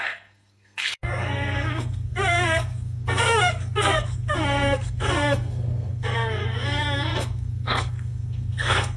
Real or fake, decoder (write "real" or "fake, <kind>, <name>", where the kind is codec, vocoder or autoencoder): fake, codec, SNAC